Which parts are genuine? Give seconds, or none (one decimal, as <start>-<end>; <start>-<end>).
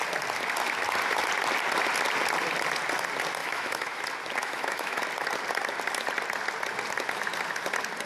0.0-3.4; 4.0-4.4; 5.0-8.1